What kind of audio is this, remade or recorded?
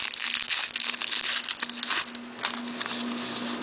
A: recorded